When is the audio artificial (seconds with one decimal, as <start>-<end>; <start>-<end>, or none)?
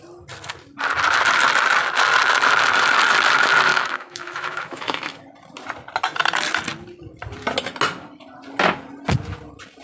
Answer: 3.7-5.2